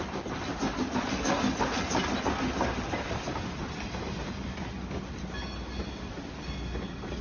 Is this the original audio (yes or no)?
yes